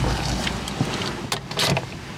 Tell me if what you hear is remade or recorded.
recorded